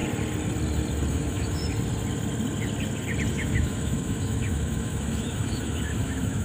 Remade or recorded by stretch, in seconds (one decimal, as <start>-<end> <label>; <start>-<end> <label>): 0.0-1.1 recorded; 1.1-1.6 remade; 1.6-3.3 recorded; 3.3-6.4 remade